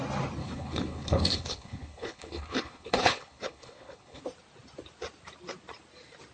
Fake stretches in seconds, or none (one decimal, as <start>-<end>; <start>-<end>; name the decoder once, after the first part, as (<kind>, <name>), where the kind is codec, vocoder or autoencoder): 0.4-4.2 (codec, HILCodec)